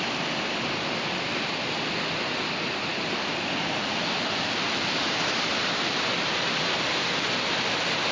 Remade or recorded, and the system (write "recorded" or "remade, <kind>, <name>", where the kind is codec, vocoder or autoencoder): recorded